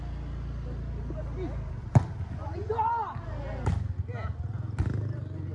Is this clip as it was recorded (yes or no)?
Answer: yes